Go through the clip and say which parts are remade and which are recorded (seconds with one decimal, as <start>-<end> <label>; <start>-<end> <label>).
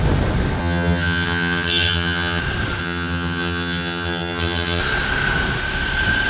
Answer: 0.0-0.6 recorded; 0.6-2.4 remade; 2.4-2.8 recorded; 2.8-4.8 remade; 4.8-6.3 recorded